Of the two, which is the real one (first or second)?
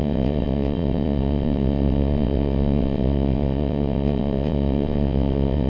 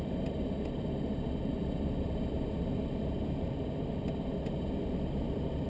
second